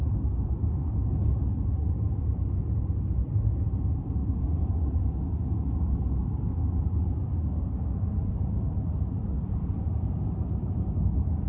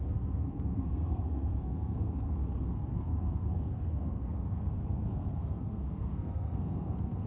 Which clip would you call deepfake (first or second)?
second